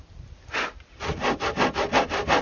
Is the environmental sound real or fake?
real